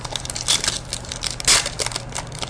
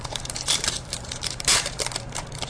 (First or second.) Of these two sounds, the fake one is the second